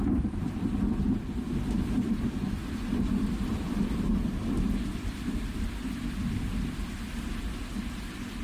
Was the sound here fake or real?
real